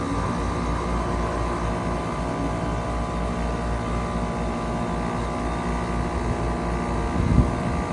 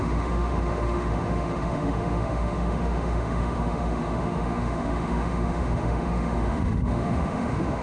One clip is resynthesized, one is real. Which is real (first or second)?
first